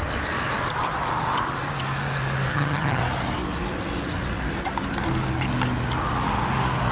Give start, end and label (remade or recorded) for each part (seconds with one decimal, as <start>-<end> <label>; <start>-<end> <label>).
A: 0.0-2.5 recorded; 2.5-3.0 remade; 3.0-6.9 recorded